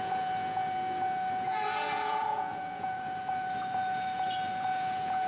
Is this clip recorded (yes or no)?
no